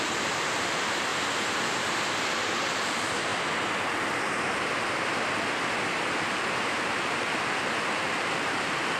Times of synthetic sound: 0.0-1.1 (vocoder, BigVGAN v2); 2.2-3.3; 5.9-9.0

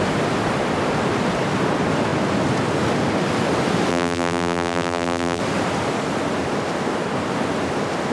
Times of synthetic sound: 3.9-5.4 (vocoder, BigVGAN v2)

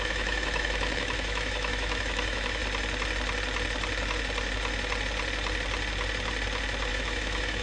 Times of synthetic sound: 0.0-2.6 (autoencoder, DAC-VAE); 6.9-7.6

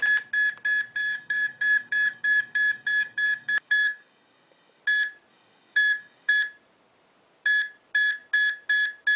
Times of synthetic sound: 1.0-4.8 (codec, DAC); 5.3-6.3

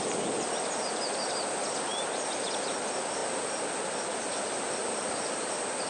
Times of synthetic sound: none

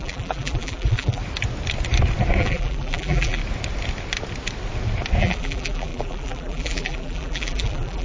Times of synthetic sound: 0.0-1.2 (vocoder, BigVGAN v2); 2.4-3.4; 5.2-8.0

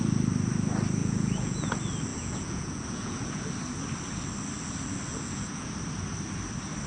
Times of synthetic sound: 1.0-1.7 (vocoder, Vocos); 2.1-3.5; 5.1-5.7